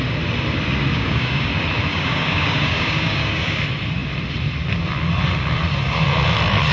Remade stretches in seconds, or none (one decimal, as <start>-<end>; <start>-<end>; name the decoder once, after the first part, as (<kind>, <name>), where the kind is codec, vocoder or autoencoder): 0.9-1.5 (codec, DAC); 1.9-3.6